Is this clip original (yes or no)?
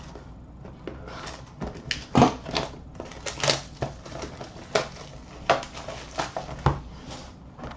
yes